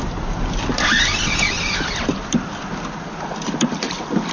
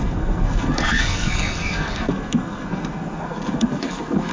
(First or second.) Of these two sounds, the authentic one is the first